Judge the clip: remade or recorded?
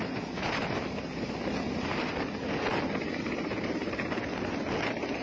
recorded